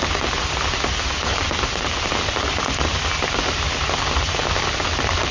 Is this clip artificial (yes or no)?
no